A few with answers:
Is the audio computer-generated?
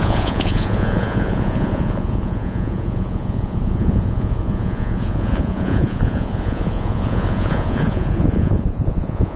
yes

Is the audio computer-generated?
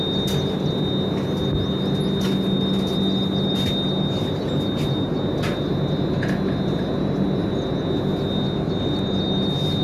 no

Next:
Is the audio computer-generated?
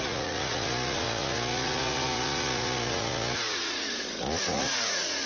yes